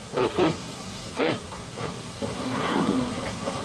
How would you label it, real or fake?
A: fake